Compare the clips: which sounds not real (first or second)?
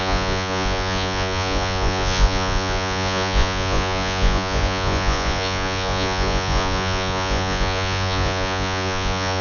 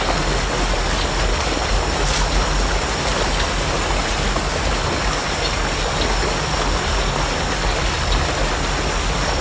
first